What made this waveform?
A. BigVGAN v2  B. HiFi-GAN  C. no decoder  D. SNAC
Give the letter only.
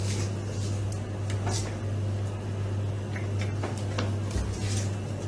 C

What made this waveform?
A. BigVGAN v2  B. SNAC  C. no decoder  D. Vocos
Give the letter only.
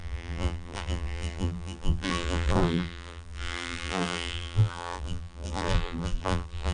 A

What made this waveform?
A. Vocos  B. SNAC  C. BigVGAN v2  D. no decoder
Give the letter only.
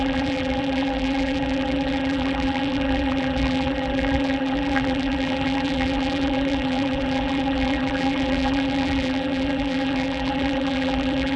C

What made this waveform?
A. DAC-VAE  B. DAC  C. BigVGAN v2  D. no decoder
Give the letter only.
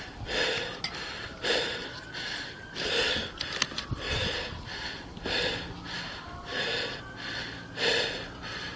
D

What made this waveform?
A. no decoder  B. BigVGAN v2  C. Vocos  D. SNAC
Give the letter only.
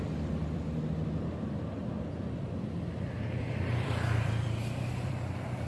B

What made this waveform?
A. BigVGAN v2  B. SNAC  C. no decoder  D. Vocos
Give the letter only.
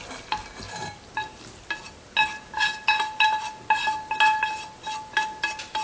C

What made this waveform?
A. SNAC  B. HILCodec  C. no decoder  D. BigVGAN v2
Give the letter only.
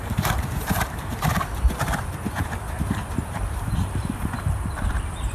D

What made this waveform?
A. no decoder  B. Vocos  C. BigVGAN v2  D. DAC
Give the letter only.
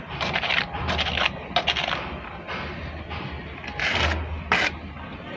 A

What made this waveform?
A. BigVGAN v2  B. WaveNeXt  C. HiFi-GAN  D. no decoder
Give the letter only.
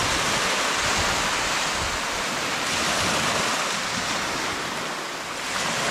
D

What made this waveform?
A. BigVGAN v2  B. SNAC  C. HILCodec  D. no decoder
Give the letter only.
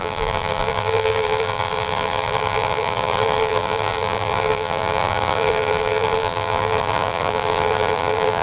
A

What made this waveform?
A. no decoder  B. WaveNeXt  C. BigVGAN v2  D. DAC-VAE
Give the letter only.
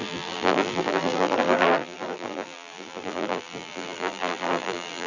C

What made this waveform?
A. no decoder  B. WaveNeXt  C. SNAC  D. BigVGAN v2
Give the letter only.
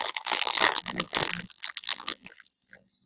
D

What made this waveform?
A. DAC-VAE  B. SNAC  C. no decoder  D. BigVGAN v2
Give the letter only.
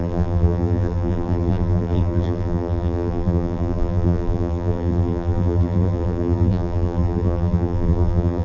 D